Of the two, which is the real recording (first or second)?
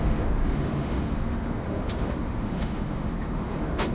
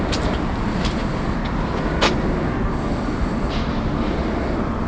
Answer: second